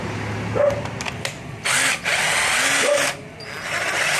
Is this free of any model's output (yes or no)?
yes